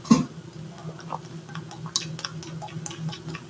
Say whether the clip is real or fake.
real